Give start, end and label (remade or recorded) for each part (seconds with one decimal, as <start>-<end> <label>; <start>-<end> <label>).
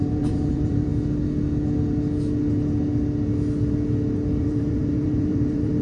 0.0-0.9 remade; 0.9-4.4 recorded; 4.4-5.8 remade